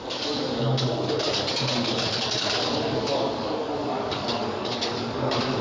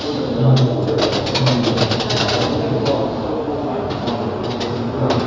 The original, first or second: second